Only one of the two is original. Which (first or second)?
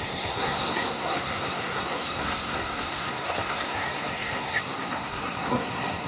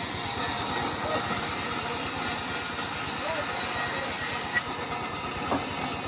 second